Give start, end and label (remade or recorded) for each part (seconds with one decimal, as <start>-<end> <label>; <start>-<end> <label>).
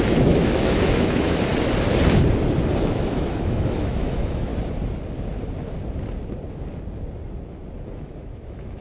0.0-1.5 remade; 1.5-2.8 recorded; 2.8-4.5 remade; 4.5-7.9 recorded; 7.9-8.8 remade